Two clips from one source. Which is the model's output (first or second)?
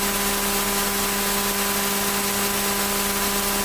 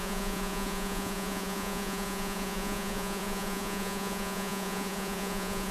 second